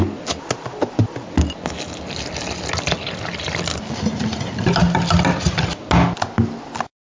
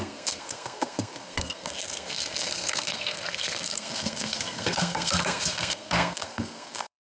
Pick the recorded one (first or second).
first